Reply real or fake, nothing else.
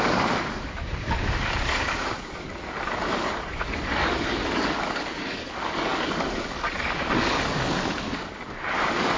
fake